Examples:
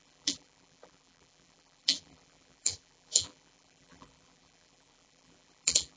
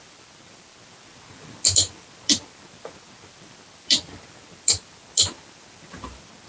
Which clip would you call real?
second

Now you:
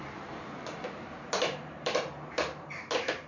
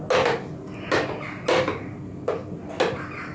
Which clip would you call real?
second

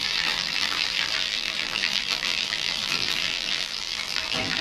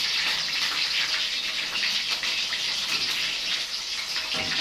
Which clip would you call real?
second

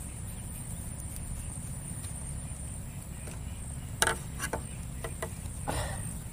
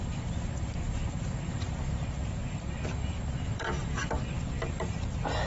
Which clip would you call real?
first